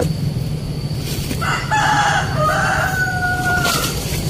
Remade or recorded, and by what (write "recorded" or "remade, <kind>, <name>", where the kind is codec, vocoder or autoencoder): remade, vocoder, BigVGAN v2